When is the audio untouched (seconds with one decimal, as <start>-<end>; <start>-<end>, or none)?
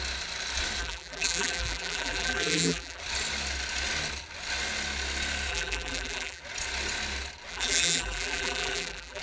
0.0-0.8; 3.0-5.5; 6.4-7.5